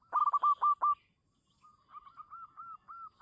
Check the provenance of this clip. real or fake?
real